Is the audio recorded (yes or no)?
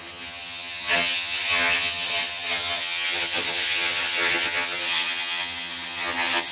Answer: no